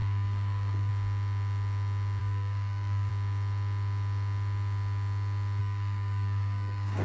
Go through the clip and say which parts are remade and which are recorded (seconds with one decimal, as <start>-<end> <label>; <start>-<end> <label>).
0.0-0.9 remade; 0.9-2.2 recorded; 2.2-3.1 remade; 3.1-5.6 recorded; 5.6-7.0 remade